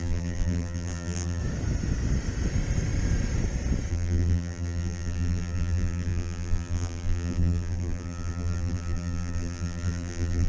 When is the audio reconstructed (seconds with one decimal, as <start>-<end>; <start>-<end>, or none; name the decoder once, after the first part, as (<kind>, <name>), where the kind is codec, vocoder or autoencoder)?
0.0-1.4 (vocoder, BigVGAN v2); 3.9-10.5